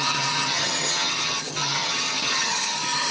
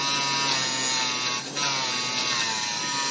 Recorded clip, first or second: second